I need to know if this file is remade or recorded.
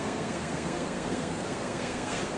remade